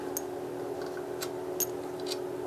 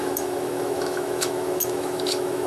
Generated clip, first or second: second